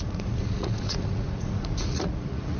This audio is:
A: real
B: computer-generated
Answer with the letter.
B